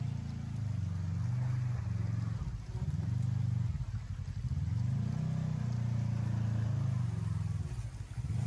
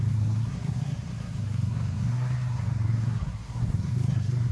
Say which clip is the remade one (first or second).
second